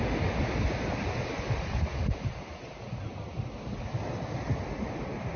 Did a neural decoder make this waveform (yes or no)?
no